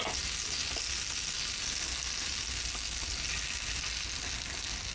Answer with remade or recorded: recorded